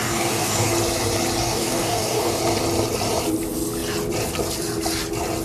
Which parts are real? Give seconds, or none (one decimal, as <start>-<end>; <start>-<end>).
0.7-1.4; 2.4-5.4